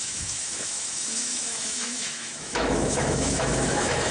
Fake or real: fake